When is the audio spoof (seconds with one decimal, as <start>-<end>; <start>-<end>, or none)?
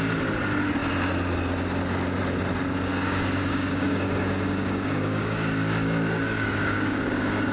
2.9-7.5